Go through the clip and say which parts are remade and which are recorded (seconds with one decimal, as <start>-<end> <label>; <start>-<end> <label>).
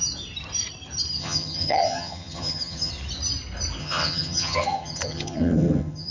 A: 0.0-1.2 recorded; 1.2-2.9 remade; 2.9-3.8 recorded; 3.8-6.1 remade